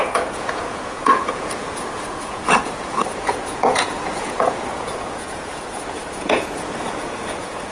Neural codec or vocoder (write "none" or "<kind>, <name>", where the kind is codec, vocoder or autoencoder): vocoder, Vocos